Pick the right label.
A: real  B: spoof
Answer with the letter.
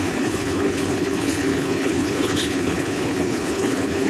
B